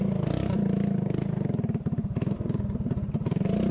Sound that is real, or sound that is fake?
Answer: real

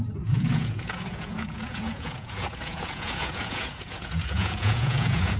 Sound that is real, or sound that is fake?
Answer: fake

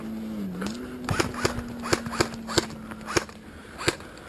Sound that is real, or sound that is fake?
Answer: real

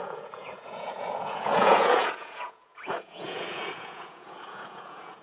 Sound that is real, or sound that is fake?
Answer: fake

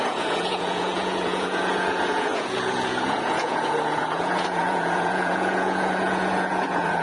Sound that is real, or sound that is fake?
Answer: fake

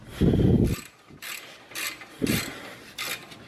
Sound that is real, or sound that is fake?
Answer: real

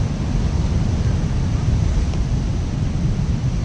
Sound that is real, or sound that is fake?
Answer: real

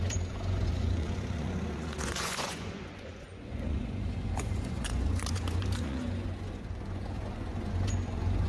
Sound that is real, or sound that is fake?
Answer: fake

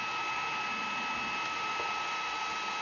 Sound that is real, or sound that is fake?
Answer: real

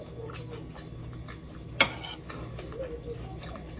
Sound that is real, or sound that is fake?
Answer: real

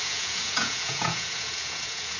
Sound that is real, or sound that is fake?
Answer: fake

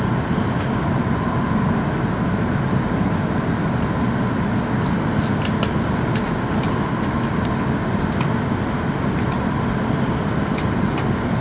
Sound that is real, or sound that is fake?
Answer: real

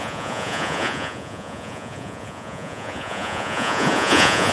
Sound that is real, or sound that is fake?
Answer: fake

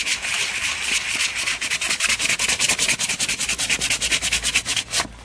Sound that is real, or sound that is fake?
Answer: real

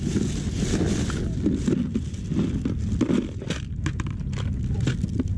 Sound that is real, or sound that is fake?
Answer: real